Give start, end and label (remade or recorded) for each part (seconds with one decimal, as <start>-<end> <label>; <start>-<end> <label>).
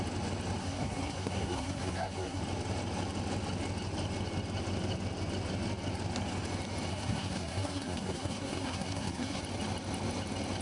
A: 0.0-0.6 recorded; 0.6-2.4 remade; 2.4-6.9 recorded; 6.9-9.4 remade; 9.4-10.6 recorded